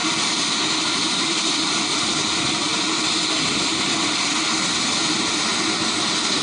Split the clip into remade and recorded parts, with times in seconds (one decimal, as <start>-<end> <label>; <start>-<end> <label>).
0.0-2.1 remade; 2.1-6.4 recorded